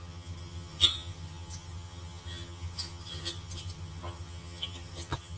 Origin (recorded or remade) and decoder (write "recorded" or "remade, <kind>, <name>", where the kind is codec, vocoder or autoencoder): remade, vocoder, HiFi-GAN